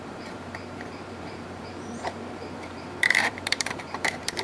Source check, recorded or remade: remade